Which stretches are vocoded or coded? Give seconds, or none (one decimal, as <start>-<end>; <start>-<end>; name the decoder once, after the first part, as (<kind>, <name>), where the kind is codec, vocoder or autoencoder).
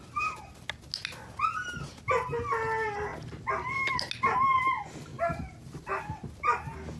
5.1-6.0 (vocoder, BigVGAN v2)